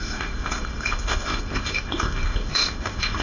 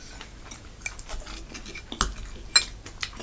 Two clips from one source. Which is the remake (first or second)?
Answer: first